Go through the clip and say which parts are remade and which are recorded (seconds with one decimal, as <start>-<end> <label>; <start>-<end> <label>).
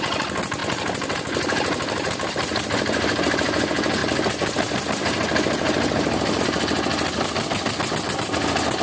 0.0-0.6 recorded; 0.6-2.3 remade; 2.3-4.0 recorded; 4.0-6.4 remade; 6.4-8.8 recorded